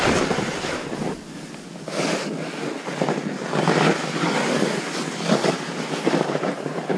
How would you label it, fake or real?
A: real